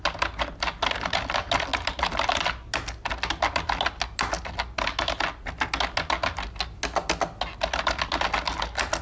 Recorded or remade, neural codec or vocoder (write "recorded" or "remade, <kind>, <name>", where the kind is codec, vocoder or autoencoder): recorded